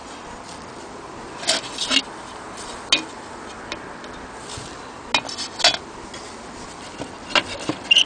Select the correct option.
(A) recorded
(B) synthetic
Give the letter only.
A